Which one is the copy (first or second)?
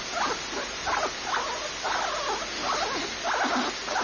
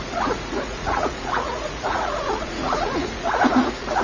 second